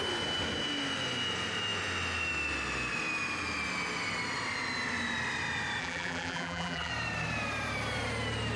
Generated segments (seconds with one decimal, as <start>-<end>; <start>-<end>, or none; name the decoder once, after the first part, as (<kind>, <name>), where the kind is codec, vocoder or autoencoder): 5.8-6.9 (vocoder, BigVGAN v2)